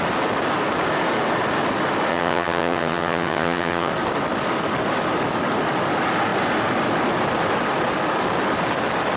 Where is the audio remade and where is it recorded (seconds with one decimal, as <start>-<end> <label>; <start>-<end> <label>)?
0.0-2.1 recorded; 2.1-3.9 remade; 3.9-9.2 recorded